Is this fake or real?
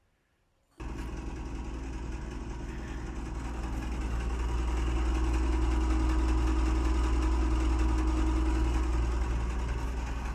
real